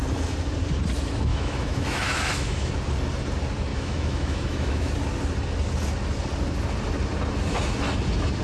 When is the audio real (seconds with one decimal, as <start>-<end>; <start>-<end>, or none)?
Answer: 0.0-1.3; 2.7-3.7; 4.9-8.4